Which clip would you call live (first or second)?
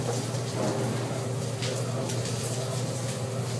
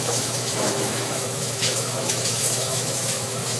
first